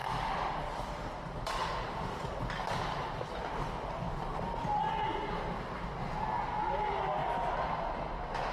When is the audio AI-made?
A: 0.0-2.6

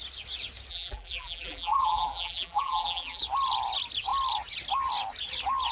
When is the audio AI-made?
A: 0.7-3.2